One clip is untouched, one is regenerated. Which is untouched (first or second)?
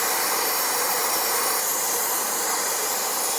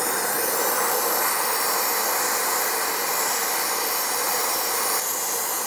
second